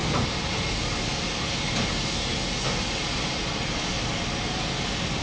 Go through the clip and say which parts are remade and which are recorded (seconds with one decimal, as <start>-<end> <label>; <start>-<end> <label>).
0.0-5.2 recorded